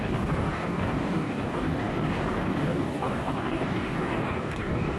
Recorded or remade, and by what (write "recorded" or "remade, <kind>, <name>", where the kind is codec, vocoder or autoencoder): remade, codec, DAC